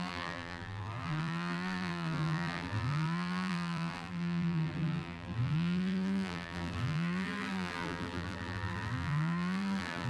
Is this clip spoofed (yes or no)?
yes